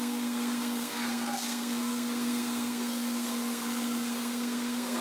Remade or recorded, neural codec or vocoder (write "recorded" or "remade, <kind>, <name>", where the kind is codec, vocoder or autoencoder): remade, codec, SNAC